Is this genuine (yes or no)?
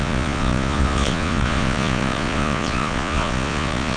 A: no